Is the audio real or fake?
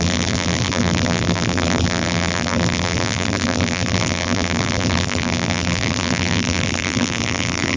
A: fake